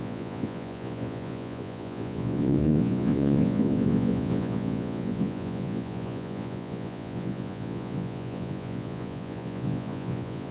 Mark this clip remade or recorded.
remade